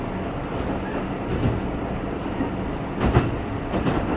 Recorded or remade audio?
recorded